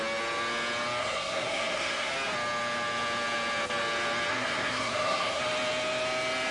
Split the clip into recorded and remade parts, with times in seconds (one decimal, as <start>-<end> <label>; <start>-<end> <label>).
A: 0.0-1.0 recorded; 1.0-2.1 remade; 2.1-4.3 recorded; 4.3-5.4 remade; 5.4-6.5 recorded